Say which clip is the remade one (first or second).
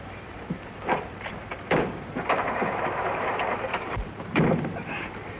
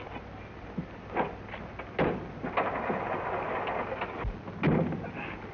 first